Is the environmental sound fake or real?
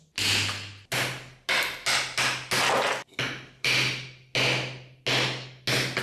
real